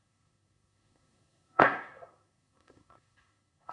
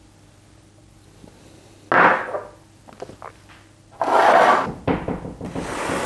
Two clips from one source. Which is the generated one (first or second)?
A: first